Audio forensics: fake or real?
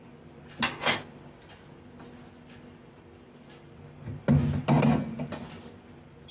real